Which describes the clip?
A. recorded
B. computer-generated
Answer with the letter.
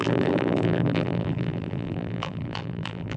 B